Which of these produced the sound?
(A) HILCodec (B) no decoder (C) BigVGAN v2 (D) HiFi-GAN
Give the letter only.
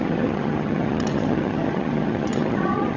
D